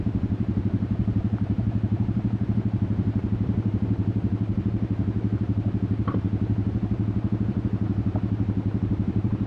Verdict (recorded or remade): remade